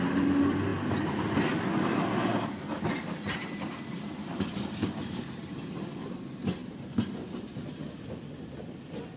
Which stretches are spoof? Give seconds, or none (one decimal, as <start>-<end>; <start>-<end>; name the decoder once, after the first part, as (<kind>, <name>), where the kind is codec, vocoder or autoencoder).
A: 6.6-9.2 (vocoder, BigVGAN v2)